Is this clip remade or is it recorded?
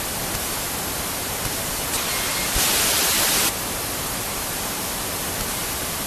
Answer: recorded